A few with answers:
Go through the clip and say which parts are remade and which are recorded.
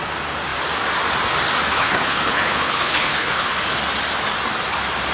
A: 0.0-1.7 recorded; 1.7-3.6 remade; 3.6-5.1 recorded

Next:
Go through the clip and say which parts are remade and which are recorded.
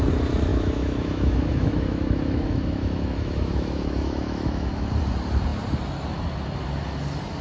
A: 0.0-0.5 recorded; 0.5-4.9 remade; 4.9-7.4 recorded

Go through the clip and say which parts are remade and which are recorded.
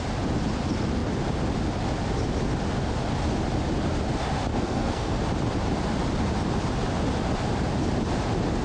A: 0.0-4.5 recorded; 4.5-5.2 remade; 5.2-8.6 recorded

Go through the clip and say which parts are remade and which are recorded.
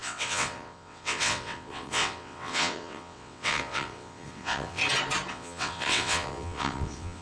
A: 0.0-4.8 remade; 4.8-5.3 recorded; 5.3-7.2 remade